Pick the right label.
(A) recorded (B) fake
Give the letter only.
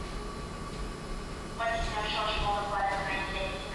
A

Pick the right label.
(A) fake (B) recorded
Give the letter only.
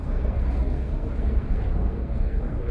A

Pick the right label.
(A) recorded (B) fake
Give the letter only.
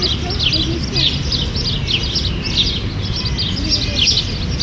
A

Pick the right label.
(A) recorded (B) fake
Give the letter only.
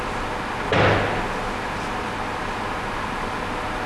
A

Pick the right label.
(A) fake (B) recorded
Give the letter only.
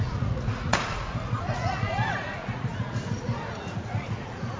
A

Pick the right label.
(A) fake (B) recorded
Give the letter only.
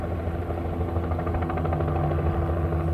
B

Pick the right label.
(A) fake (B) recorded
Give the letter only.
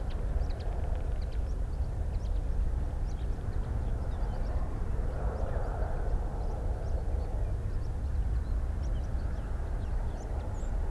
B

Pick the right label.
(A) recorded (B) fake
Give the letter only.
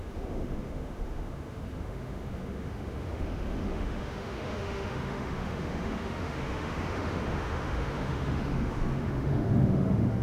B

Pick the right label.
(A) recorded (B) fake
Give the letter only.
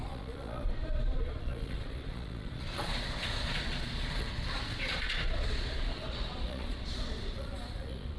B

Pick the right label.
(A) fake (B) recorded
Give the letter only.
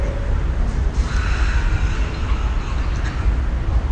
B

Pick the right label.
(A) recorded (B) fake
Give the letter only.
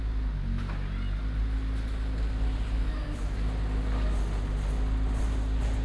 A